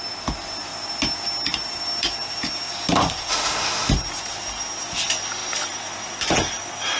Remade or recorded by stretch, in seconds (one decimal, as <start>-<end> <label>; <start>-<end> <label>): 0.0-3.3 recorded; 3.3-3.9 remade; 3.9-7.0 recorded